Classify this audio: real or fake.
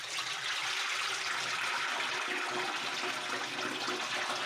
real